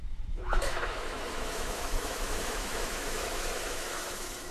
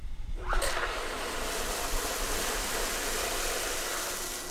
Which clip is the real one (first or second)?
second